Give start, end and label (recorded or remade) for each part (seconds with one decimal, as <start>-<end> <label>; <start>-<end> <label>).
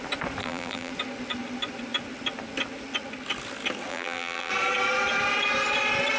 0.0-0.4 recorded; 0.4-0.9 remade; 0.9-3.9 recorded; 3.9-4.5 remade; 4.5-6.2 recorded